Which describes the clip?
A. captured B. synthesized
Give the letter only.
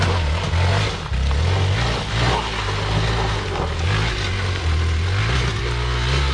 A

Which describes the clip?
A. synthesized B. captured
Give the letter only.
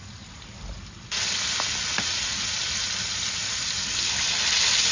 B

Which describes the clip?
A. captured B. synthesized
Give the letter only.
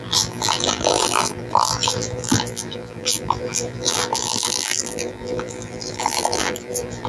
B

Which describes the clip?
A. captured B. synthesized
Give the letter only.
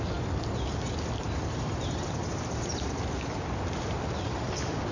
B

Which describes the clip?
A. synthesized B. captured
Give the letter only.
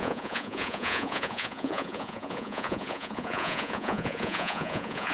A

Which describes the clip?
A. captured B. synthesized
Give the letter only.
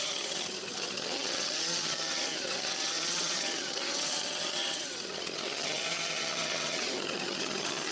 B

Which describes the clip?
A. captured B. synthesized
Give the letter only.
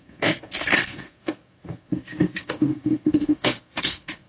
B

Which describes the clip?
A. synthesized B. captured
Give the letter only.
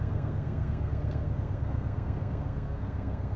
A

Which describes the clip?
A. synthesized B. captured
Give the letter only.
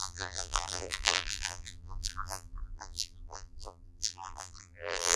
A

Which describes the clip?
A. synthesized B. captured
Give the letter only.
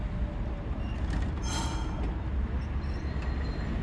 B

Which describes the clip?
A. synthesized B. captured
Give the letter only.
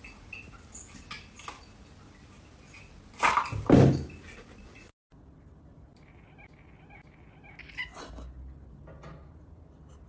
B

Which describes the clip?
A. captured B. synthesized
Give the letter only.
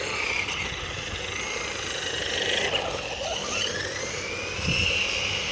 A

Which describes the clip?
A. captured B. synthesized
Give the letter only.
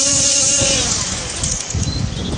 B